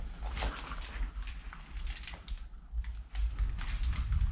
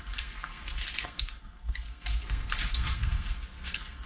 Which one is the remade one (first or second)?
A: second